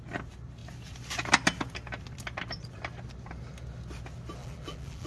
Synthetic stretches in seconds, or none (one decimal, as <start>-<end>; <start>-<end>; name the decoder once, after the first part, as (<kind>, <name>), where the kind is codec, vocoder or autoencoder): 4.4-5.1 (vocoder, BigVGAN v2)